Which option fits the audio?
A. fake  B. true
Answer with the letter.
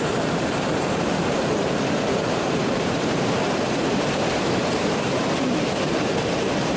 A